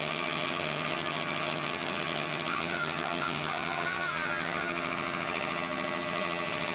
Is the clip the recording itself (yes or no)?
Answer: no